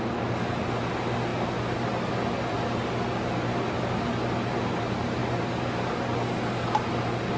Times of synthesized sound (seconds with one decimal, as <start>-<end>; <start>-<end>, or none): none